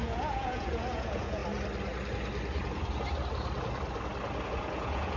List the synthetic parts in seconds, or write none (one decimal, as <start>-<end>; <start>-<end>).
0.0-1.4; 4.5-5.2

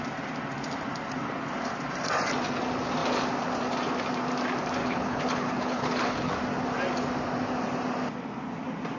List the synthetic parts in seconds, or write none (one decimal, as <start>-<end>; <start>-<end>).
4.8-6.3